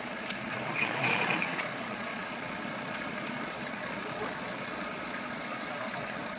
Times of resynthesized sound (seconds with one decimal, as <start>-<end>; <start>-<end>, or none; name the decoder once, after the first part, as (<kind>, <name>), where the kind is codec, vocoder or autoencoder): 0.0-6.4 (vocoder, Vocos)